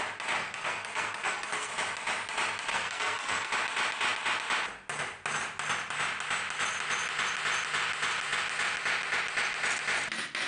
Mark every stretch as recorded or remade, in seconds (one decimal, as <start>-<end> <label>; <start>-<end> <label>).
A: 0.0-0.4 recorded; 0.4-1.7 remade; 1.7-2.7 recorded; 2.7-3.5 remade; 3.5-10.5 recorded